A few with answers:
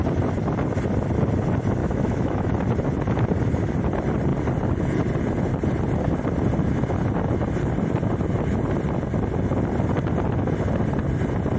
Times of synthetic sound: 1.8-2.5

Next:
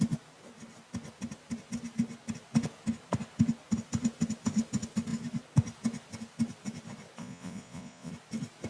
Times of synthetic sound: 7.2-8.1

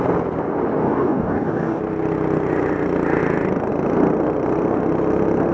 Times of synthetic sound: 0.8-1.8

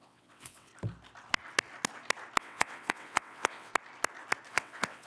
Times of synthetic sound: 0.0-0.7; 2.4-3.7; 4.5-5.1